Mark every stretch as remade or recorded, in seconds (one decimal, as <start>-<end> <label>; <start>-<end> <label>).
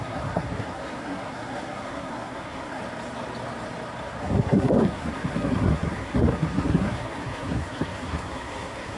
0.0-2.8 remade; 2.8-4.2 recorded; 4.2-9.0 remade